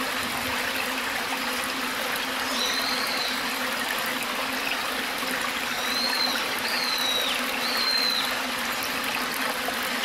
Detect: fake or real real